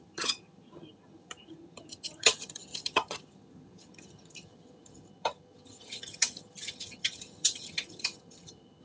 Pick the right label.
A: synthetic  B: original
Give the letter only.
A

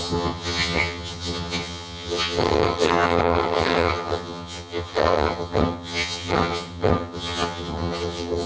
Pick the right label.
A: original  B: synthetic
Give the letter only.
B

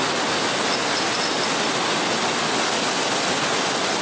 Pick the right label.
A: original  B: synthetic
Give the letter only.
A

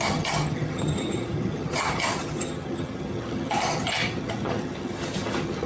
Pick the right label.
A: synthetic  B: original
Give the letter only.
A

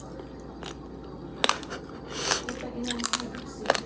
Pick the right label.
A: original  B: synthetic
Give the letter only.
A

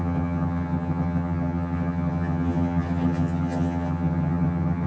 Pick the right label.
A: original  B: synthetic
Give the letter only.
B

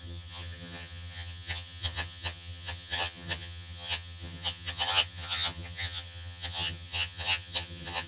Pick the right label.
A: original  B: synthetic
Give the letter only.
B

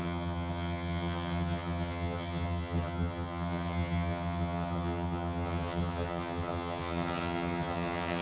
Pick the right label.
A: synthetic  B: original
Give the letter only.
A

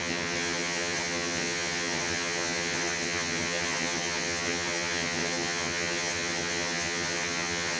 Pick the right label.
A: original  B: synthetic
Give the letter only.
B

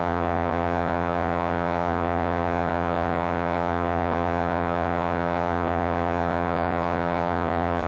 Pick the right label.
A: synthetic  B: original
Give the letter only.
A